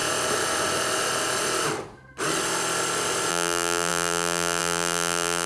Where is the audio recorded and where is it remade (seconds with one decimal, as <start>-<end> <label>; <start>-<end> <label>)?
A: 0.0-3.3 recorded; 3.3-5.5 remade